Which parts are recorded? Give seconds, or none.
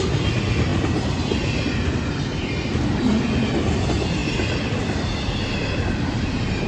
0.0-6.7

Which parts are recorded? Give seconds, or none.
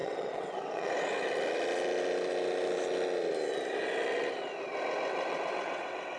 0.9-5.1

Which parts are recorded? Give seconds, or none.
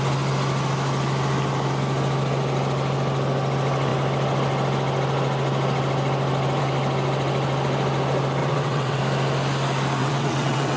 0.0-8.4; 9.0-10.0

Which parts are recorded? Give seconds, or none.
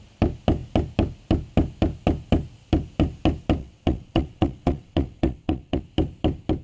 0.0-3.6; 5.8-6.6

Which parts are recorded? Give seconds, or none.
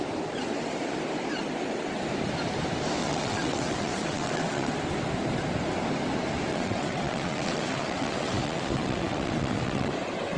0.0-3.0; 4.7-6.5; 9.9-10.4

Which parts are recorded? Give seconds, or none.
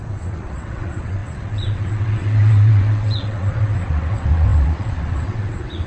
none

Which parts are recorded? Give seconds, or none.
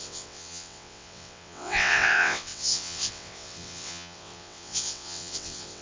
none